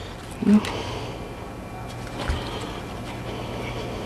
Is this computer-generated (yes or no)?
no